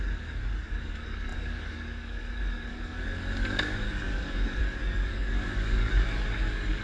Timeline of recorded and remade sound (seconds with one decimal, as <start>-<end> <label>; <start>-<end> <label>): 0.0-6.8 remade